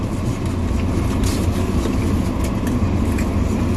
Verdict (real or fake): real